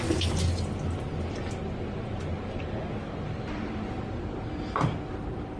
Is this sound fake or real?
real